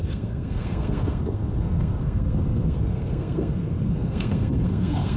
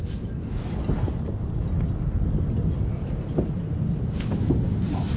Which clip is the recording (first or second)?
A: second